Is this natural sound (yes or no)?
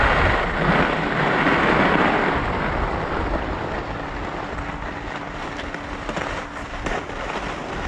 yes